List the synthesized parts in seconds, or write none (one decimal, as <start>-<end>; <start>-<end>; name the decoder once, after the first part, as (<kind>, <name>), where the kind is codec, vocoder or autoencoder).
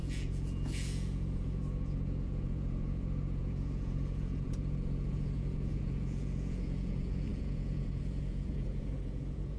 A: 0.0-9.6 (vocoder, Vocos)